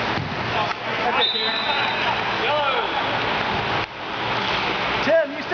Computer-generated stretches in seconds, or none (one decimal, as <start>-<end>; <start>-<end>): none